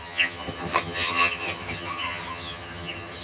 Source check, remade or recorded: remade